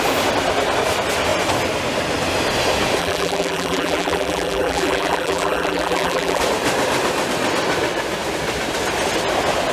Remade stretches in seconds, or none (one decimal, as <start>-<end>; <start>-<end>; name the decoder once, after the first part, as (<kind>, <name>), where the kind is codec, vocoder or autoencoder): 3.0-6.4 (vocoder, BigVGAN v2)

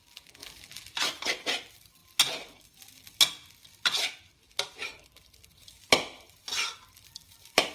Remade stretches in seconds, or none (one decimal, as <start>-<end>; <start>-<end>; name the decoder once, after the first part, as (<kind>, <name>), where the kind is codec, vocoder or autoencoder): 0.0-2.0 (vocoder, BigVGAN v2); 3.7-7.7

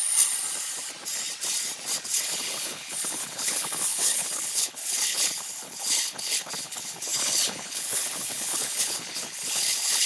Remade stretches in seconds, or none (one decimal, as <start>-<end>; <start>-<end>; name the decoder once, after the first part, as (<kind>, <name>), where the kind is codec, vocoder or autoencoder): 2.2-10.1 (codec, HILCodec)

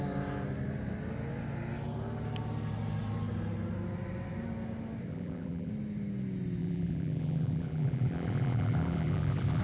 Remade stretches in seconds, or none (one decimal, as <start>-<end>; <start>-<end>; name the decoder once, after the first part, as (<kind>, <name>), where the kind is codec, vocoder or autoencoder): 5.1-5.7 (vocoder, BigVGAN v2); 6.6-9.6

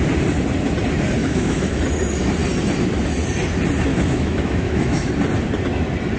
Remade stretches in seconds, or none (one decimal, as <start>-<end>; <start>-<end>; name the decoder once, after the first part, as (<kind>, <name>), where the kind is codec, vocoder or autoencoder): 1.2-1.8 (autoencoder, DAC-VAE); 3.9-5.1